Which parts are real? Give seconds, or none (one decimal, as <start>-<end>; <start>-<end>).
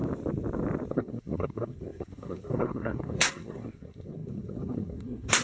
0.0-0.9